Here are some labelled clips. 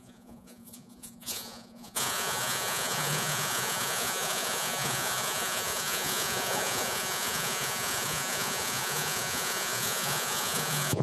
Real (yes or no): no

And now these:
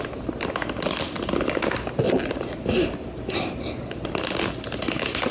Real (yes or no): yes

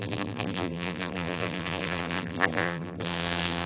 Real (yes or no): no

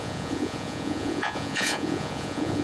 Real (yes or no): no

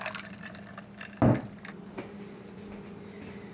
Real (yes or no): yes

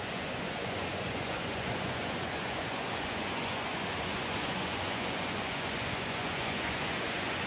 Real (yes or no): no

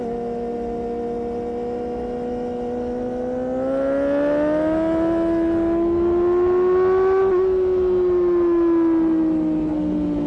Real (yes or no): yes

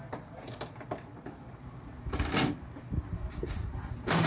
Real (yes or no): no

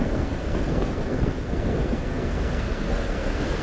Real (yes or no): no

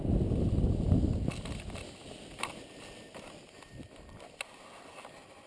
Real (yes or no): yes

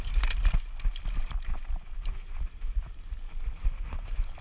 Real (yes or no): yes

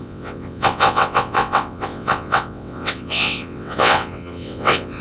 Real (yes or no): no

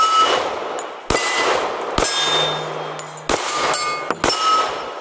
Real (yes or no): yes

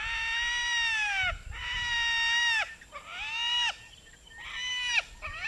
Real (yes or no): yes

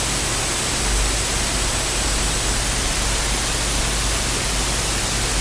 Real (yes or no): yes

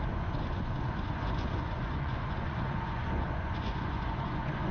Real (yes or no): no